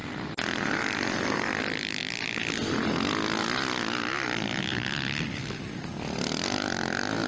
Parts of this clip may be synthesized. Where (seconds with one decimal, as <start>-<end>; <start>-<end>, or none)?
none